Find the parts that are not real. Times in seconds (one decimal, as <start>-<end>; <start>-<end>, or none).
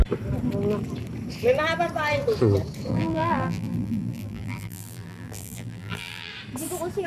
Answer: 2.9-6.3